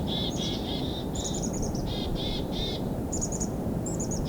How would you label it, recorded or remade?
remade